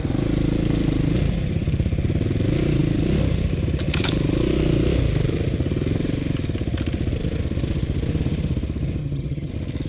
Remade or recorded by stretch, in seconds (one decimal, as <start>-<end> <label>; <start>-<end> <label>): 0.0-9.0 recorded; 9.0-9.5 remade; 9.5-9.9 recorded